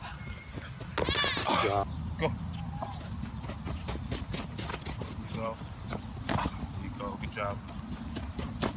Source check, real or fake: real